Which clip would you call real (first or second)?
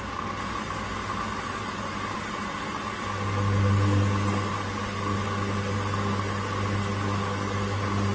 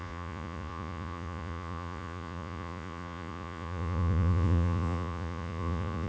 first